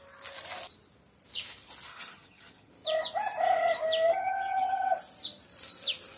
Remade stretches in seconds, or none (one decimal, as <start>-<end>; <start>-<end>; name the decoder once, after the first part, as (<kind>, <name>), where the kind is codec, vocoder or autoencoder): 1.9-2.7 (vocoder, HiFi-GAN); 4.1-5.0